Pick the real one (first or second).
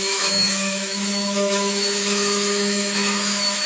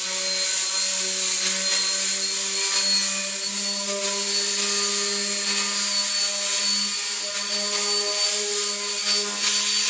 second